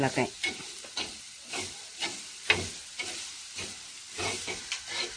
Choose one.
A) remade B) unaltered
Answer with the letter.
B